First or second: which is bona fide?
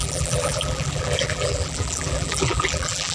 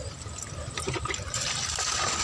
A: second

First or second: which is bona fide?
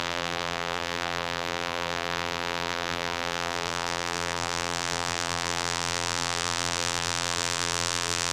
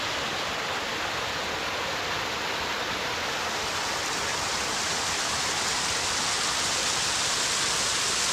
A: second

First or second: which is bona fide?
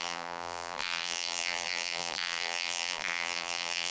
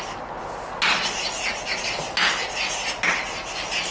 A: second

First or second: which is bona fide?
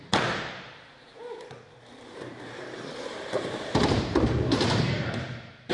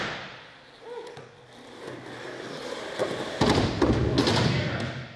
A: second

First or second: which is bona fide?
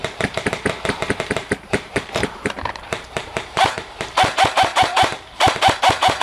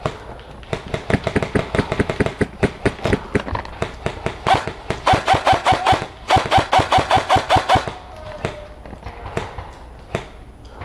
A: second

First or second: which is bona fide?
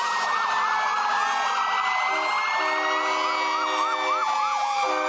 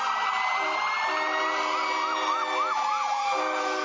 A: first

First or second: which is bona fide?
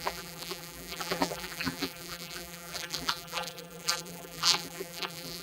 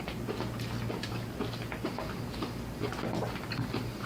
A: second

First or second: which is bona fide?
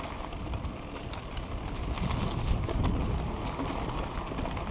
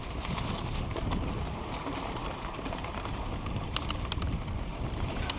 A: first